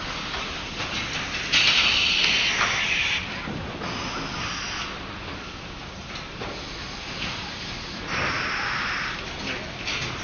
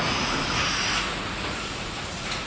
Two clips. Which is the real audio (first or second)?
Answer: first